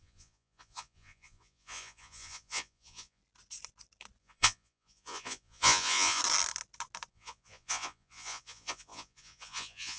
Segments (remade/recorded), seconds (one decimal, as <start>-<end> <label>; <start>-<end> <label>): 0.0-3.2 remade; 3.2-4.2 recorded; 4.2-6.2 remade; 6.2-7.1 recorded; 7.1-10.0 remade